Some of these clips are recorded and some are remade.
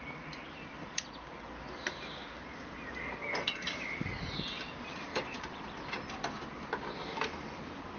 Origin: recorded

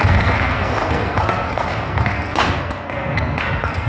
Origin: remade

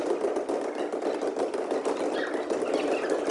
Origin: recorded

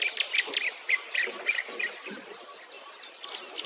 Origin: recorded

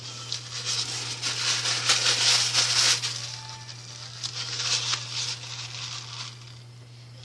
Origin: recorded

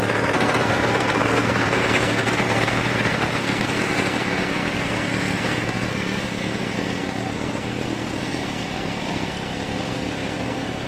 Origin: remade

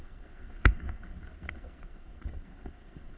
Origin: remade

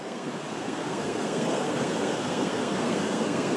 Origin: remade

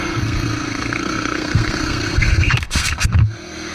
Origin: remade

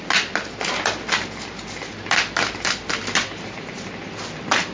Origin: recorded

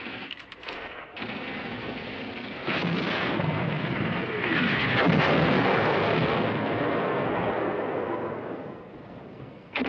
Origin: remade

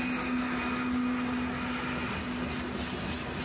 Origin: recorded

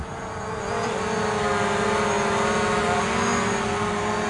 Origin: recorded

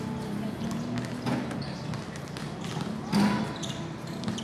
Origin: recorded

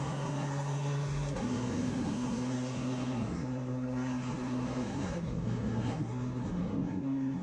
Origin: remade